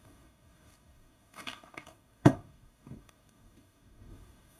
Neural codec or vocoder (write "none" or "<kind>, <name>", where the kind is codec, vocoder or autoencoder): codec, DAC